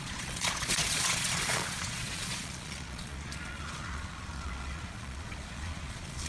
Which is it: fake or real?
fake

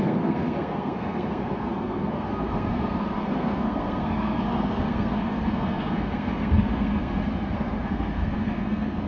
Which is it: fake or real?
fake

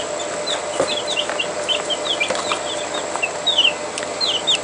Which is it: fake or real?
real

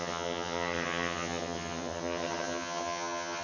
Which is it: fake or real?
fake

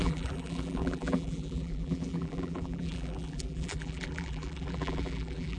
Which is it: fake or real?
fake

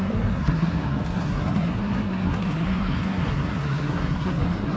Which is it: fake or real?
fake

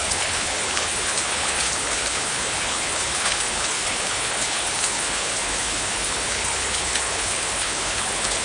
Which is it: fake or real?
fake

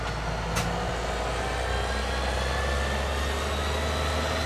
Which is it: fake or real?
real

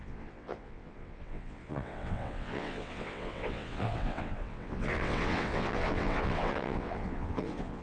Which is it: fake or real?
fake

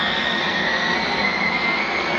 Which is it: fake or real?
fake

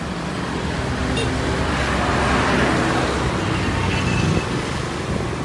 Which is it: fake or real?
real